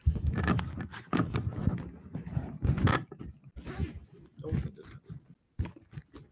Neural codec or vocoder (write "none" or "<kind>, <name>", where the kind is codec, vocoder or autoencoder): none